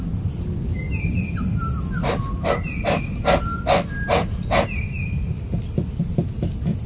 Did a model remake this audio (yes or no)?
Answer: no